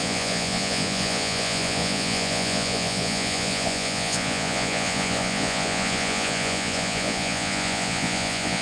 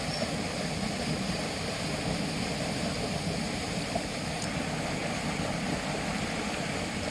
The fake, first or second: first